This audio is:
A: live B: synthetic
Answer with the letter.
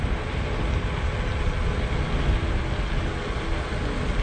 A